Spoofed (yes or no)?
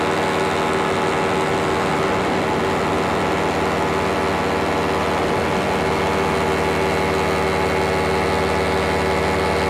no